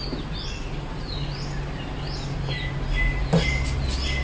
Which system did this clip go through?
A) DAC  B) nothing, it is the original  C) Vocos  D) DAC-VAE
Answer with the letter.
B